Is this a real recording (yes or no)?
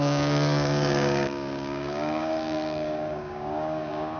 no